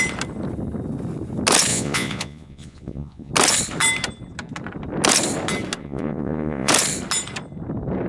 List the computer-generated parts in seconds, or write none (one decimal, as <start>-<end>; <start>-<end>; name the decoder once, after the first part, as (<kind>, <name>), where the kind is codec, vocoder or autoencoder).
1.7-3.3 (vocoder, Vocos); 5.8-6.7